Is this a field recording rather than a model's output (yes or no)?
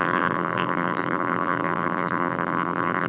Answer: no